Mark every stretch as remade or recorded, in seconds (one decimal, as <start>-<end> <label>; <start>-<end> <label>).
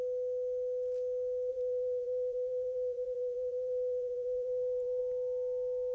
0.0-1.5 recorded; 1.5-5.0 remade; 5.0-5.9 recorded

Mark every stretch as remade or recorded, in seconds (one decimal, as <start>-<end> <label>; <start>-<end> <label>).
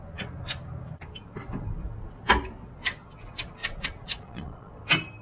0.0-3.6 recorded; 3.6-4.7 remade; 4.7-5.2 recorded